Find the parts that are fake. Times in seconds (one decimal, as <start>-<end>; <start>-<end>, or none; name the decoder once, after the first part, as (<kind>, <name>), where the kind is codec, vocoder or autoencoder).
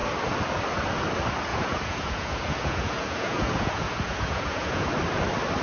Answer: 1.5-4.9 (vocoder, Vocos)